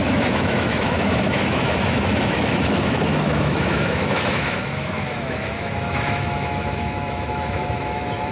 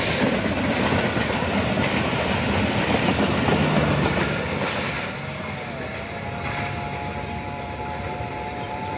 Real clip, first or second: second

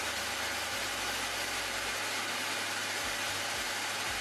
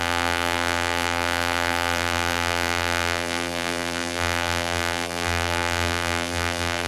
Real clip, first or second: first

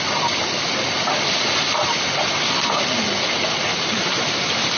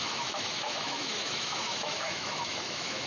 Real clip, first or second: first